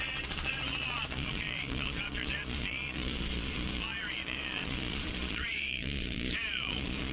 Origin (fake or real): fake